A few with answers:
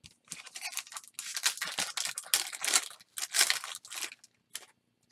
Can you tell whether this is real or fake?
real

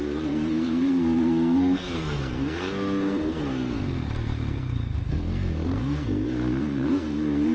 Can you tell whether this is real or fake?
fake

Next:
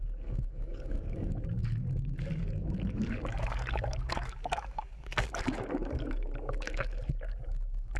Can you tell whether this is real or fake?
fake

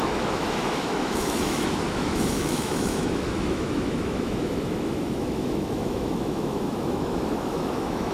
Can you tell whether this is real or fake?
fake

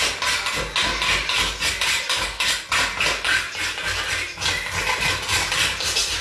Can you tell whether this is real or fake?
real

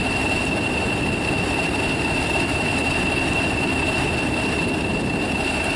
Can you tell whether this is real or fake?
real